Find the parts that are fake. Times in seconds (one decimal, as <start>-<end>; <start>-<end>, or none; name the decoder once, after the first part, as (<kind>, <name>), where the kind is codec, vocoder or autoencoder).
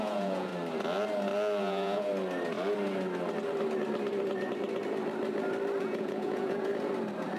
0.0-0.5 (vocoder, Vocos); 1.6-2.1; 5.8-6.7